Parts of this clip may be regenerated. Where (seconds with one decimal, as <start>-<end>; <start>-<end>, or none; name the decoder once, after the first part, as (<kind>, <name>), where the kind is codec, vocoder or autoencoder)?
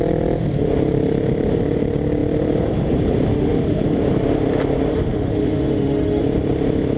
3.3-3.8 (autoencoder, DAC-VAE); 4.9-6.2